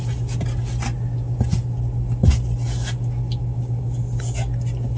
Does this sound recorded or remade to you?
recorded